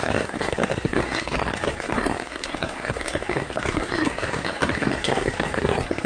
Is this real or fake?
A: fake